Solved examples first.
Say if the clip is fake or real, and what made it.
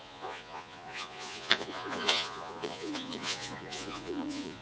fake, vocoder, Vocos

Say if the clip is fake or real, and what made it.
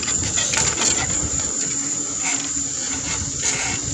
real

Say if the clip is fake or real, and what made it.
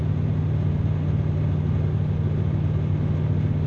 real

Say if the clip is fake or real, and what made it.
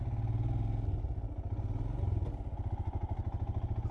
real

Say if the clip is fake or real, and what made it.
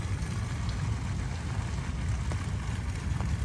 real